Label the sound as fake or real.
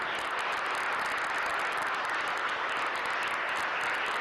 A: real